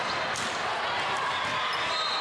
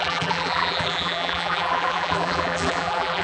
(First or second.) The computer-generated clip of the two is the second